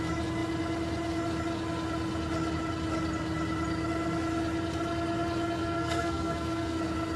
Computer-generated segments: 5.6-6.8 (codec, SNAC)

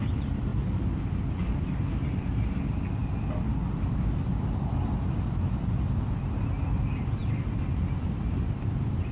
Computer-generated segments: none

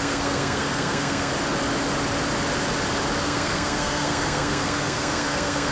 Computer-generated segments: 0.0-1.3 (codec, SNAC); 3.2-5.7

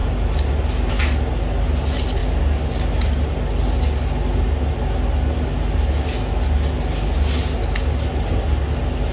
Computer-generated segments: none

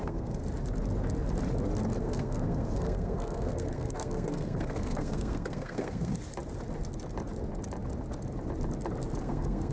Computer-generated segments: 0.0-0.4 (codec, SNAC); 2.0-6.1; 9.2-9.7

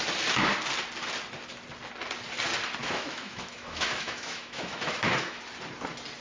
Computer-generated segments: 2.8-5.4 (autoencoder, DAC-VAE)

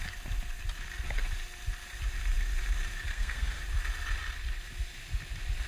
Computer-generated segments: 3.1-3.6 (codec, SNAC)